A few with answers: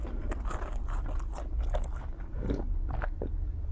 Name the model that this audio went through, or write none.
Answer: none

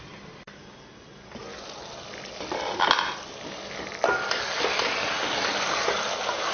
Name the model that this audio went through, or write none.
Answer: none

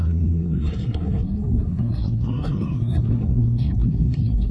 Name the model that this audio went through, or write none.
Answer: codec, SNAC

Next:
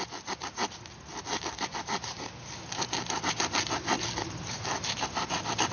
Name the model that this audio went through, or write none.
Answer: none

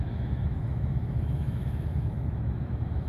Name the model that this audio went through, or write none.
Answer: autoencoder, DAC-VAE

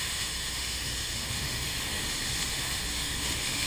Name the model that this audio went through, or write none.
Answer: autoencoder, DAC-VAE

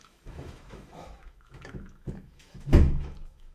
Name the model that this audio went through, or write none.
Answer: autoencoder, DAC-VAE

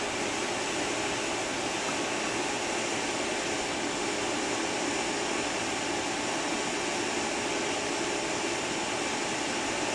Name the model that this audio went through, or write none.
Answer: none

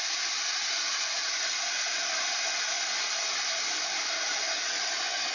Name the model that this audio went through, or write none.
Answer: none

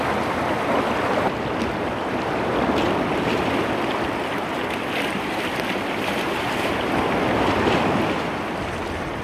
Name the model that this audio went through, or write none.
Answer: none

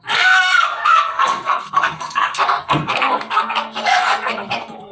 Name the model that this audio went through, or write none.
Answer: codec, SNAC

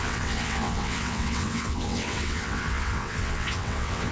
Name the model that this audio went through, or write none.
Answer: vocoder, WaveNeXt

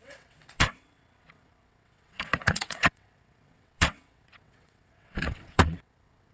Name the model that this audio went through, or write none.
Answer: vocoder, WaveNeXt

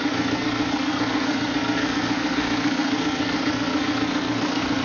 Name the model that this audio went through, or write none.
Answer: codec, SNAC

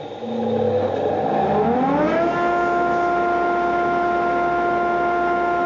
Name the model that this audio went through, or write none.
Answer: none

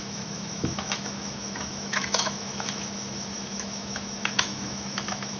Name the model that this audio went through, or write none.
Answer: autoencoder, DAC-VAE